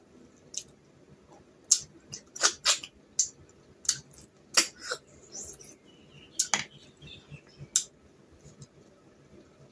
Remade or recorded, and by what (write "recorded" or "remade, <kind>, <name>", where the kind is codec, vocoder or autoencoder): recorded